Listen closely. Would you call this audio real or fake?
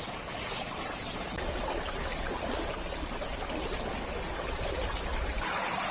real